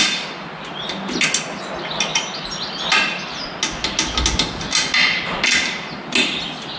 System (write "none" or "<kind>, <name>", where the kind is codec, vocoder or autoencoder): none